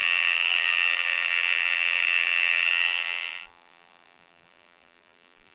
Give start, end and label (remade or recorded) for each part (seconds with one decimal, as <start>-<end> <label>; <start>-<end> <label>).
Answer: 0.0-5.5 remade